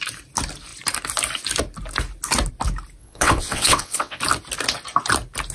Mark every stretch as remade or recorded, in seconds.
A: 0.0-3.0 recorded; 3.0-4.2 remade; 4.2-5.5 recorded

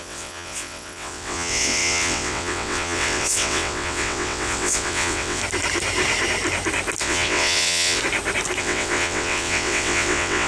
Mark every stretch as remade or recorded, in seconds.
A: 0.0-5.4 remade; 5.4-7.0 recorded; 7.0-8.0 remade; 8.0-8.6 recorded; 8.6-10.5 remade

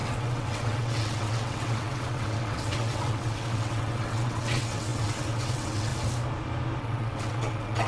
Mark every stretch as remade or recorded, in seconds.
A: 0.0-5.9 remade; 5.9-6.8 recorded; 6.8-7.9 remade

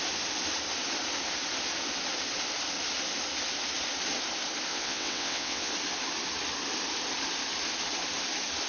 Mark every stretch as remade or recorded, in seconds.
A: 0.0-4.7 recorded; 4.7-5.7 remade; 5.7-8.7 recorded

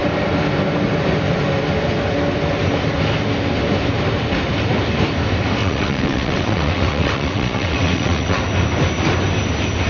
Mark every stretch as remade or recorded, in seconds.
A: 0.0-5.6 recorded; 5.6-8.4 remade; 8.4-9.9 recorded

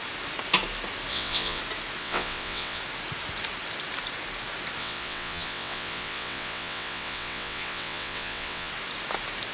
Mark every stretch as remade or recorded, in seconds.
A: 0.0-1.1 recorded; 1.1-1.6 remade; 1.6-2.0 recorded; 2.0-2.8 remade; 2.8-4.8 recorded; 4.8-8.7 remade; 8.7-9.5 recorded

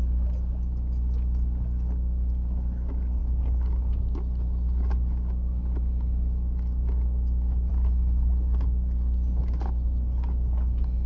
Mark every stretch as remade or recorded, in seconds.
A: 0.0-11.1 recorded